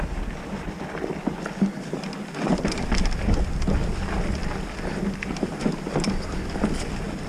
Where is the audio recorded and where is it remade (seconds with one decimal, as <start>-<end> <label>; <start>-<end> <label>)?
0.0-7.3 recorded